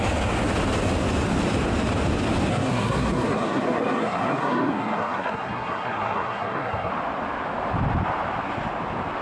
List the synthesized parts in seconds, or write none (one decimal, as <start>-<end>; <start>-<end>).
2.5-6.9